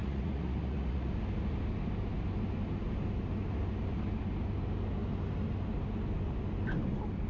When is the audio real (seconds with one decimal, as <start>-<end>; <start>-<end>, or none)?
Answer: 1.1-7.3